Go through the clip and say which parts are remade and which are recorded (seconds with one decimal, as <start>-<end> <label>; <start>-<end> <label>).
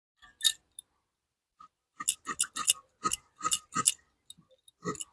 0.0-5.1 recorded